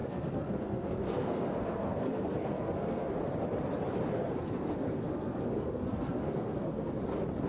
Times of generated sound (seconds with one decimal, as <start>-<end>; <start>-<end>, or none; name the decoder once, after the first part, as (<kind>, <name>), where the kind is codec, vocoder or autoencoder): 0.0-3.1 (codec, SNAC); 4.1-7.0